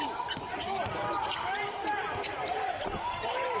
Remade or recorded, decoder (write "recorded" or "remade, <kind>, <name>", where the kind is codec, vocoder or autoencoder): remade, vocoder, BigVGAN v2